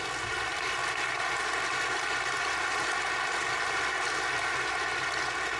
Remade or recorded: recorded